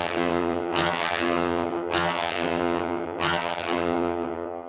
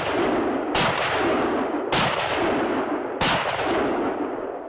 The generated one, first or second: first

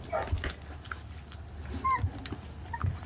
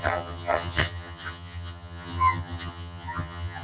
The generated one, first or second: second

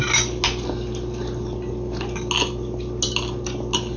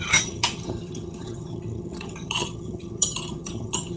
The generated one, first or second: second